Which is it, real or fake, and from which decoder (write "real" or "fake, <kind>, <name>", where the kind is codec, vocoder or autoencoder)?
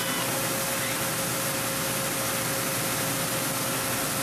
real